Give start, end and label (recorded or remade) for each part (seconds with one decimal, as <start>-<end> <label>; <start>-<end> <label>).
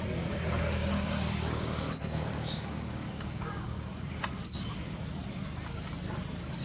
0.0-0.8 recorded; 0.8-4.1 remade; 4.1-6.6 recorded